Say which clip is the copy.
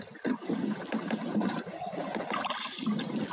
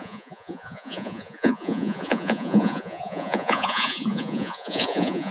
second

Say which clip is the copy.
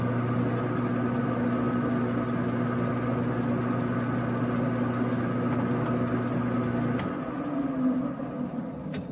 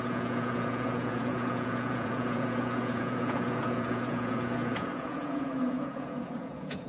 second